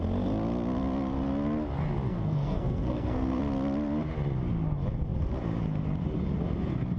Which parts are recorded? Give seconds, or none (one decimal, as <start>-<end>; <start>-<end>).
0.0-2.1; 3.4-7.0